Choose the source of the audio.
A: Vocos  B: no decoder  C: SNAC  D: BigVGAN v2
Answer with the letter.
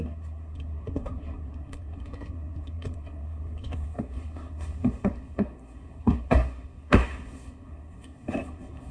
C